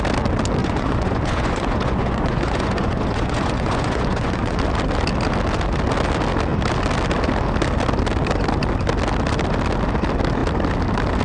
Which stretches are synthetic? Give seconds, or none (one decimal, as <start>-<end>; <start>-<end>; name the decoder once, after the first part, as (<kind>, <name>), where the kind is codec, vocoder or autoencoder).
0.6-4.6 (vocoder, Vocos)